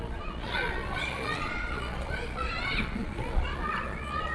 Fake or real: fake